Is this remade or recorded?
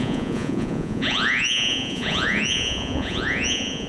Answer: remade